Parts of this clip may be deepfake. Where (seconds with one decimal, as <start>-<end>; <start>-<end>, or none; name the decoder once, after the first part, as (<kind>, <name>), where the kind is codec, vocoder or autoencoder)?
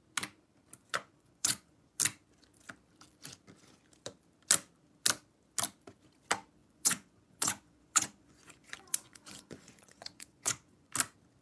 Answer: 0.8-2.0 (vocoder, Vocos); 6.6-10.9